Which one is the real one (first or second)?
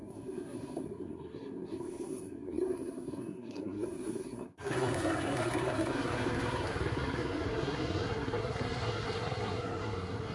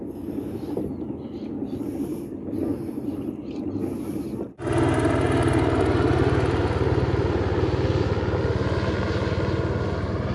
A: second